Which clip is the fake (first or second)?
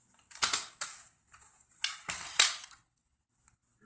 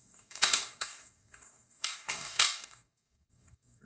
second